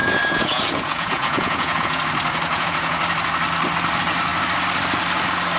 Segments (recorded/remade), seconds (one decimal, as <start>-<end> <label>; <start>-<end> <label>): 0.0-2.0 remade; 2.0-2.5 recorded; 2.5-3.0 remade; 3.0-5.6 recorded